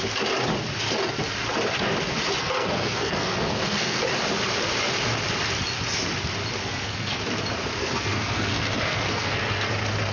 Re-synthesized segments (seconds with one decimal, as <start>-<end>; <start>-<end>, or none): 2.4-4.0; 6.6-7.2; 7.8-9.7